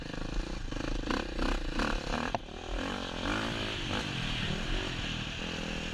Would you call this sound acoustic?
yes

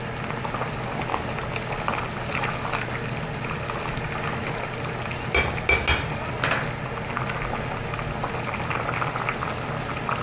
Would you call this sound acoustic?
yes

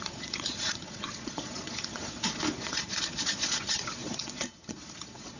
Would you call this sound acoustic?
no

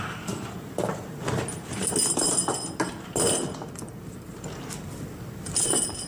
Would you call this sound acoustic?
yes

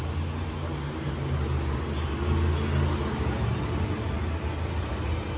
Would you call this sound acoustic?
yes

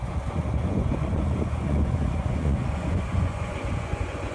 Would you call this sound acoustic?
no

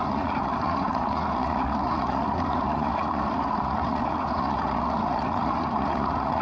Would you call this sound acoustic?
no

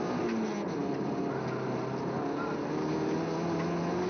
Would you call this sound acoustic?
yes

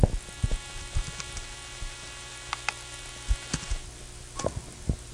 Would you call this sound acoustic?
yes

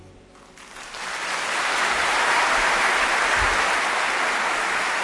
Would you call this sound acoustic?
yes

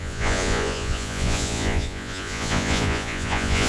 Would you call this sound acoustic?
no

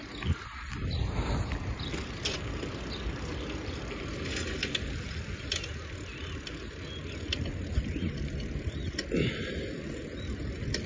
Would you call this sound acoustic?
yes